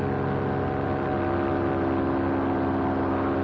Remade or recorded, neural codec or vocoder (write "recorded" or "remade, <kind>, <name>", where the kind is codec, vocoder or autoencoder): recorded